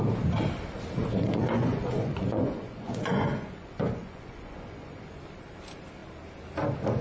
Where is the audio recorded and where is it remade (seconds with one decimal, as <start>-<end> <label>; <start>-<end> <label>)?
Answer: 0.0-1.0 recorded; 1.0-5.2 remade; 5.2-7.0 recorded